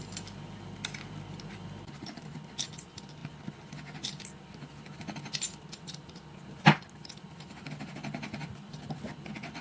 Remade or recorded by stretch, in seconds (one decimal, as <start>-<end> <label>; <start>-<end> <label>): 0.0-9.6 recorded